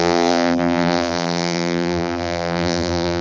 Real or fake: fake